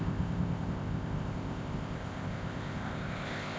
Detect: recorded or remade remade